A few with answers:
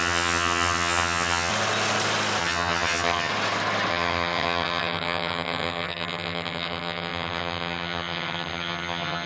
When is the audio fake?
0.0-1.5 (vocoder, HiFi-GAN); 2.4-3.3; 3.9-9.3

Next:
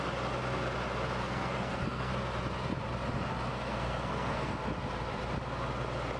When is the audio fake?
1.2-2.1 (codec, SNAC); 3.5-4.6

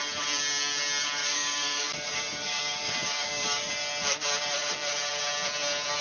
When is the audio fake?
1.2-3.7 (codec, DAC)

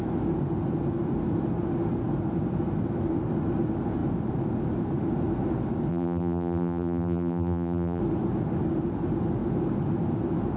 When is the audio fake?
5.9-8.0 (vocoder, BigVGAN v2)